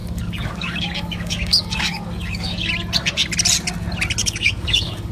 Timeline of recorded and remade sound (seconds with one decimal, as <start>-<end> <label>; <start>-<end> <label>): 0.0-2.7 remade; 2.7-4.2 recorded; 4.2-5.1 remade